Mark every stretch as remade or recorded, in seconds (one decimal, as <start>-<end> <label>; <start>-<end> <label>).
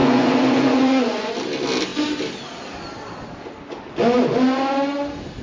0.0-1.3 remade; 1.3-5.4 recorded